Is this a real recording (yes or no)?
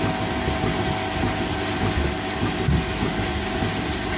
yes